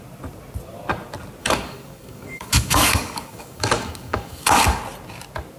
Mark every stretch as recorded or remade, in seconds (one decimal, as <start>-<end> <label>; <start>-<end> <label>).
0.0-1.4 recorded; 1.4-4.8 remade; 4.8-5.6 recorded